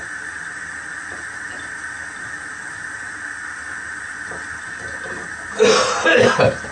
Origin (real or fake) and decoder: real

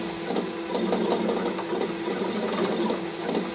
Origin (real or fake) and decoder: real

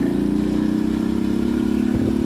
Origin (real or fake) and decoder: real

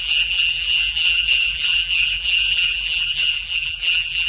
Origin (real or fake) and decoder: fake, vocoder, BigVGAN v2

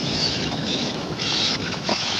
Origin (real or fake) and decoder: fake, autoencoder, DAC-VAE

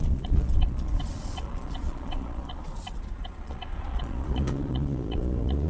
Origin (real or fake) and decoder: fake, vocoder, Vocos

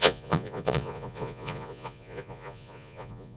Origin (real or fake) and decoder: fake, vocoder, Vocos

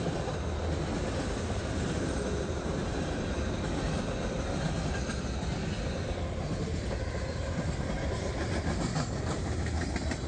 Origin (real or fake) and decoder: real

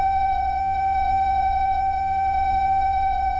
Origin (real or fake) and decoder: fake, vocoder, WaveNeXt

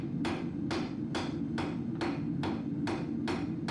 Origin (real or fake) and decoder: real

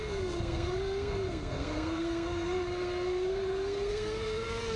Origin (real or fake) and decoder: fake, codec, SNAC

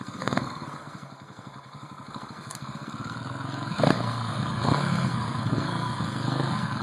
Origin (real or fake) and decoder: fake, codec, SNAC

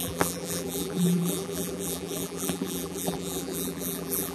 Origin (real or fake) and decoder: fake, vocoder, BigVGAN v2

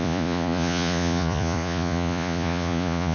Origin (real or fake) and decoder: fake, vocoder, Vocos